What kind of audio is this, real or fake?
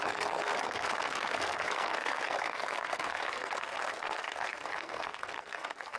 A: fake